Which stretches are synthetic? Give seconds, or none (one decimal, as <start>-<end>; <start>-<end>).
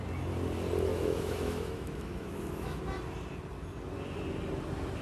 0.9-2.8